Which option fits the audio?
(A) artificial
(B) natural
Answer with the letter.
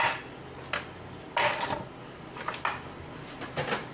B